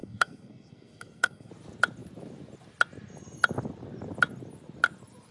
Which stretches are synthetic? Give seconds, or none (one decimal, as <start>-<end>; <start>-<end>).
0.0-1.5